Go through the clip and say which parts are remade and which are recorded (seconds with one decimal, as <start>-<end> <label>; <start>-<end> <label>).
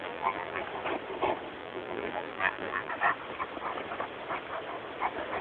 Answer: 0.0-0.6 remade; 0.6-1.6 recorded; 1.6-2.9 remade; 2.9-5.4 recorded